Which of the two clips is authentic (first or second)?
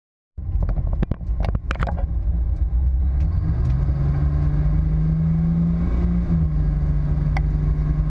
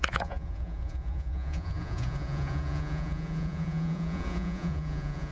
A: first